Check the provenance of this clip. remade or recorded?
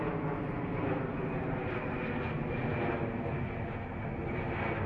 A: recorded